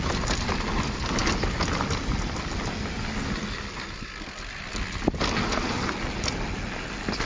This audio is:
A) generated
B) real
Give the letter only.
B